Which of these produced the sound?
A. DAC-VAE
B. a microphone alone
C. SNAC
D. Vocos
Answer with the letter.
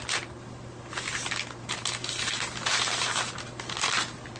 B